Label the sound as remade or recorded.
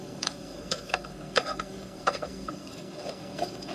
remade